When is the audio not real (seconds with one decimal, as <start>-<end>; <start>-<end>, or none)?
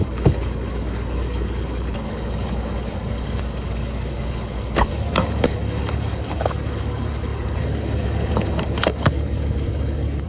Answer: 0.0-10.3